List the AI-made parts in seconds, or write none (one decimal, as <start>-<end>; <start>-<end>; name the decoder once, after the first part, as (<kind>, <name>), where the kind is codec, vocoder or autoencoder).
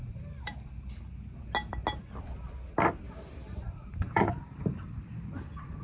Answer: 0.0-1.0 (vocoder, BigVGAN v2); 3.4-4.9